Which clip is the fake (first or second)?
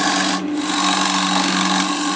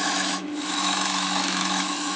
second